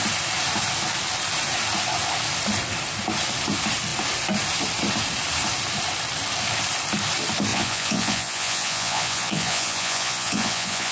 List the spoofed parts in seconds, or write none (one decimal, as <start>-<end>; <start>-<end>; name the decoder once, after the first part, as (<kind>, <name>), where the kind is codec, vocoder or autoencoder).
7.5-10.9 (vocoder, Vocos)